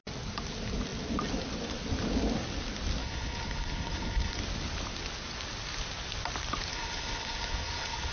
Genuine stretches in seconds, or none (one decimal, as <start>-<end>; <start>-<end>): 0.0-3.0; 4.4-6.7